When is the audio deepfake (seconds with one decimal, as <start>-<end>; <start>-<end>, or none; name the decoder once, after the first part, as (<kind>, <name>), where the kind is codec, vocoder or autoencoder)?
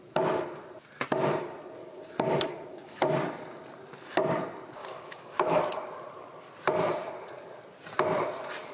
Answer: 1.8-3.0 (codec, DAC); 4.8-5.6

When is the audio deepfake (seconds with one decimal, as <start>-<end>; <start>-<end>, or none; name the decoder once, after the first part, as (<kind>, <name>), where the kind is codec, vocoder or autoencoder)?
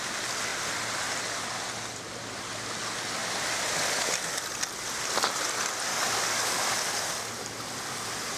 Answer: 5.9-6.6 (codec, DAC)